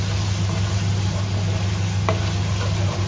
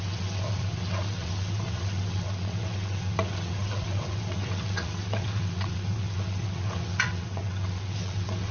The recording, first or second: first